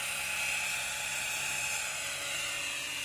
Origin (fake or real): fake